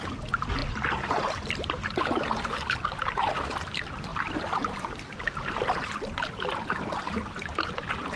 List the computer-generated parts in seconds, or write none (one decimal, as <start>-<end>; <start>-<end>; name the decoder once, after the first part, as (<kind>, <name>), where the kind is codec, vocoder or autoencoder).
none